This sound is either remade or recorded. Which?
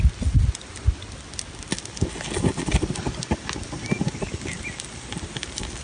recorded